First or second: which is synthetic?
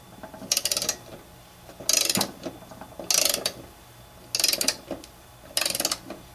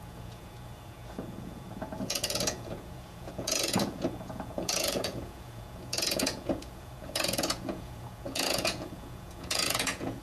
second